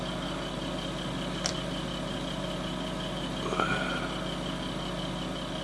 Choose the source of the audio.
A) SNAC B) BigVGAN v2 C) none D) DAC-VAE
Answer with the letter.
C